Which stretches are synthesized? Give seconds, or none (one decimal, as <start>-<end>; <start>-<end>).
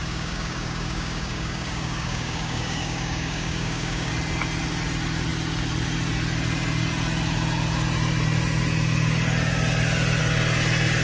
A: 0.0-4.1